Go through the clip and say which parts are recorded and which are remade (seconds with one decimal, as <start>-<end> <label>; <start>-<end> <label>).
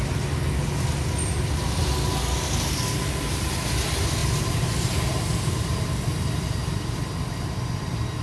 0.0-8.2 recorded